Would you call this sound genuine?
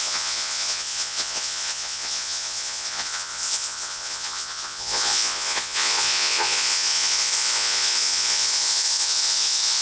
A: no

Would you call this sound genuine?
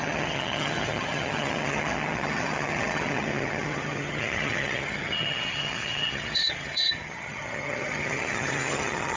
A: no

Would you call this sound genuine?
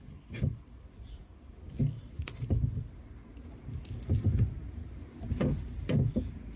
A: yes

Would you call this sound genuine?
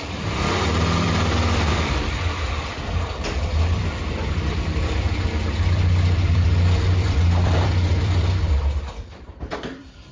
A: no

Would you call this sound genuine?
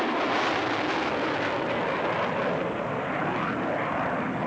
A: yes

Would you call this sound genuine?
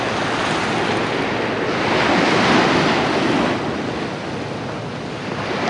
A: yes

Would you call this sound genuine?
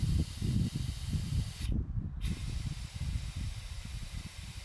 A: yes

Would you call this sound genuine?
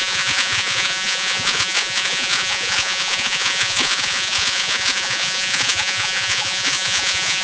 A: no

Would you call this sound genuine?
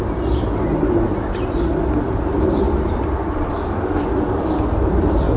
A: yes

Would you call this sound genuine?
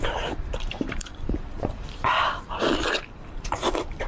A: no